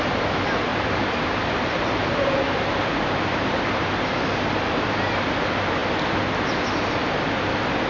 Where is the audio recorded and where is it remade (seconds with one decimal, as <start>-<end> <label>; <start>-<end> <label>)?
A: 0.0-0.7 recorded; 0.7-3.9 remade; 3.9-7.9 recorded